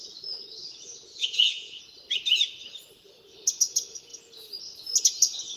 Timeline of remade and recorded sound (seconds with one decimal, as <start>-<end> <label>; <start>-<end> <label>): 0.0-1.1 recorded; 1.1-1.8 remade; 1.8-5.6 recorded